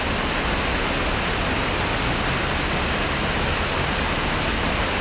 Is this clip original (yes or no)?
yes